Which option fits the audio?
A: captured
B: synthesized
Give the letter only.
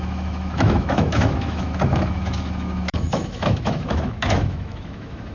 B